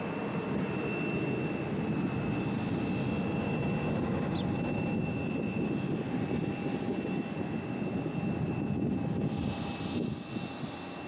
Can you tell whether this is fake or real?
real